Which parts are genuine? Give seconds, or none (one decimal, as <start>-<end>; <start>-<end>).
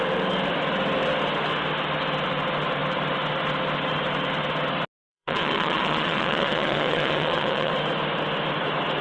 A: 0.0-5.1; 7.7-9.0